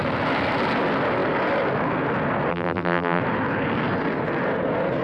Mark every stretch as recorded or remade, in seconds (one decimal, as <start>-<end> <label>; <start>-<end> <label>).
0.0-2.5 recorded; 2.5-3.2 remade; 3.2-5.0 recorded